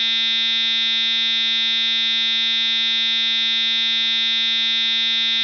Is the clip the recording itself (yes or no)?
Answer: yes